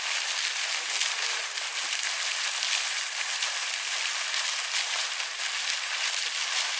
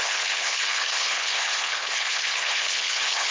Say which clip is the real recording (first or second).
first